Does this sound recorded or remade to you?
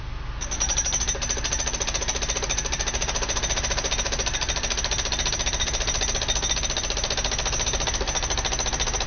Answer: recorded